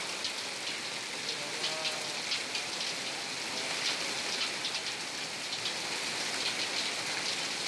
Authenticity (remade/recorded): recorded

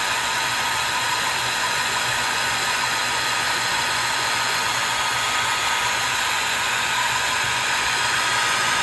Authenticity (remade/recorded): remade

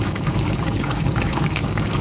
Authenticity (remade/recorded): remade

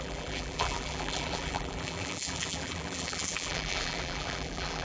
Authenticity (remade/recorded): remade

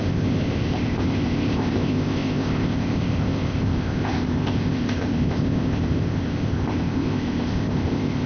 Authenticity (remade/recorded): remade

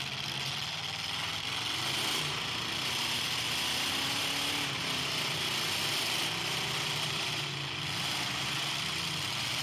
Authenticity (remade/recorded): remade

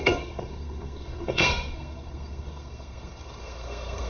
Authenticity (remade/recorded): remade